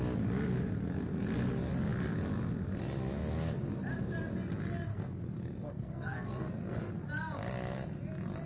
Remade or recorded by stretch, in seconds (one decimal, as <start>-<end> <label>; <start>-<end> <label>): 0.0-4.9 recorded; 4.9-6.9 remade; 6.9-8.5 recorded